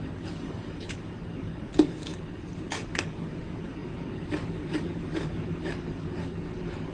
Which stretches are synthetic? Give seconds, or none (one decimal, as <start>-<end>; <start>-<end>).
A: 0.0-6.9